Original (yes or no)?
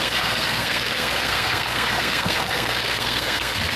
no